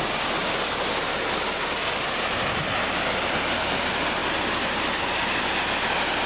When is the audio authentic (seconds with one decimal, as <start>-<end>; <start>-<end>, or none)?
0.0-6.3